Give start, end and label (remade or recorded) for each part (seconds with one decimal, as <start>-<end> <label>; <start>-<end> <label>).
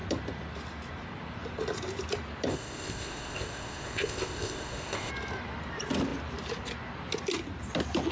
0.0-2.5 recorded; 2.5-5.1 remade; 5.1-8.1 recorded